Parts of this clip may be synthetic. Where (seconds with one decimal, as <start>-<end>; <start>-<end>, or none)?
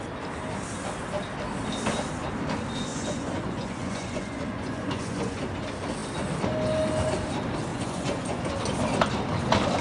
2.9-5.4; 7.7-8.4